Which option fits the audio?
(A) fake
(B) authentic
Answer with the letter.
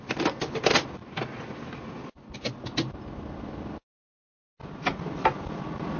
B